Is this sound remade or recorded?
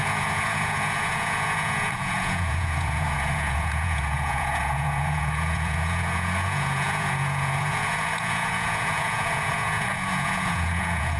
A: remade